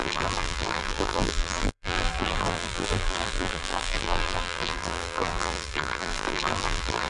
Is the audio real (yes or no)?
no